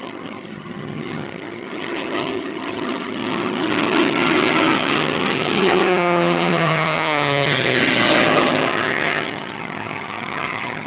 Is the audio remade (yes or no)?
yes